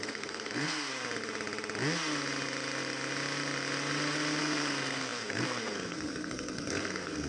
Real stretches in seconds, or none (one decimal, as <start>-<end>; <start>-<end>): 0.9-4.4